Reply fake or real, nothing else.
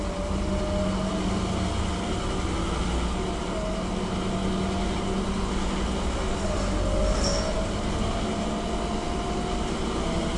real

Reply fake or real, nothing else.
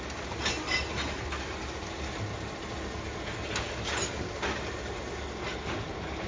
real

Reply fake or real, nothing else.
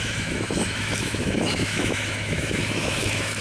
fake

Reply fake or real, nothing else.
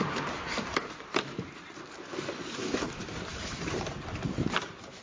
fake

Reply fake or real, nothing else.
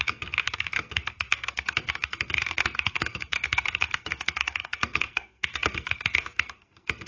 fake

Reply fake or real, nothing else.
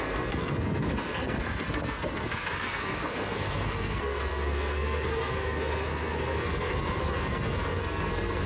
fake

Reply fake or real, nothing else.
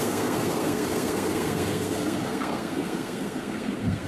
fake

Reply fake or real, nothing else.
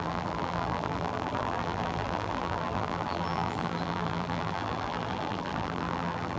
fake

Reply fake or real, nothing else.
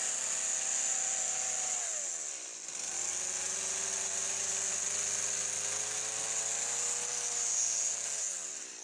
real